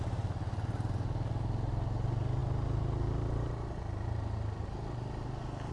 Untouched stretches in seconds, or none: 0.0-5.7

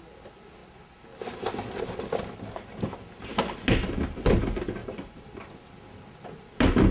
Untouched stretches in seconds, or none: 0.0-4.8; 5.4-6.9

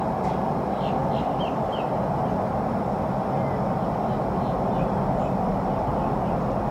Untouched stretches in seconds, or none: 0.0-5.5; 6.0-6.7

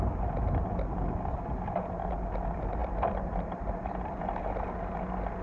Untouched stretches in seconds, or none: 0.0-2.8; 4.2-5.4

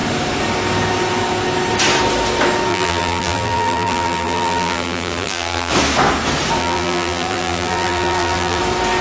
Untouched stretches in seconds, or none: 0.0-2.7; 5.7-6.6; 8.6-9.0

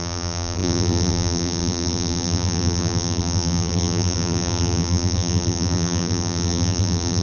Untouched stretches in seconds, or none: none

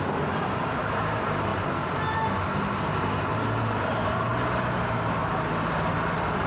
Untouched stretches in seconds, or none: 1.5-2.3; 4.3-5.9

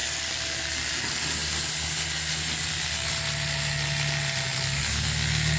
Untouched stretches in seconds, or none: 0.0-5.6